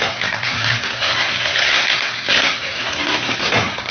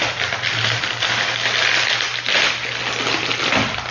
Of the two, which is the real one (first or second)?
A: second